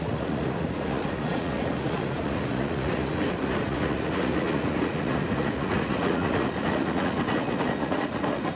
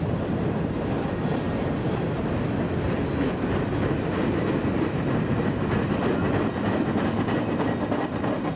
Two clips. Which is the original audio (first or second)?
second